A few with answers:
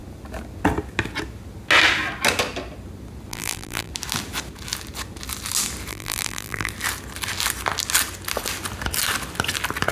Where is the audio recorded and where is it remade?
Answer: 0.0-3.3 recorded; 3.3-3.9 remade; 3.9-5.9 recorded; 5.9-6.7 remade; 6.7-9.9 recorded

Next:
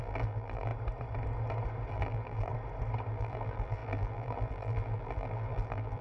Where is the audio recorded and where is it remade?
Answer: 0.0-0.7 remade; 0.7-1.9 recorded; 1.9-2.5 remade; 2.5-3.1 recorded; 3.1-6.0 remade

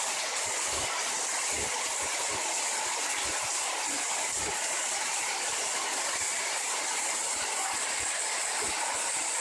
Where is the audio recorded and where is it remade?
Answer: 0.0-6.3 recorded; 6.3-7.5 remade; 7.5-9.4 recorded

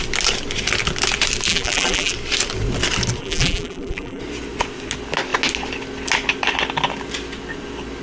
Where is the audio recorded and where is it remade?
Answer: 0.0-1.5 recorded; 1.5-2.1 remade; 2.1-3.2 recorded; 3.2-4.2 remade; 4.2-8.0 recorded